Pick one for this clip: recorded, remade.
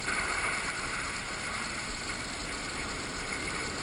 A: remade